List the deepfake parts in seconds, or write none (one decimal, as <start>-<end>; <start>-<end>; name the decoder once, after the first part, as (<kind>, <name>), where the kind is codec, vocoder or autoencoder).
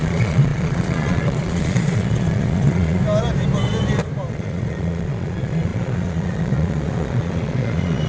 0.0-3.0 (vocoder, Vocos); 4.3-8.1